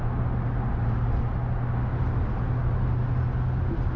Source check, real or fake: real